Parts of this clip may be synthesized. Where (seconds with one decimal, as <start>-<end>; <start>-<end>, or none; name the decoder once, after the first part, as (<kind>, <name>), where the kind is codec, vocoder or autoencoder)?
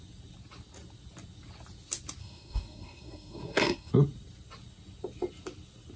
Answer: 2.2-3.9 (codec, SNAC)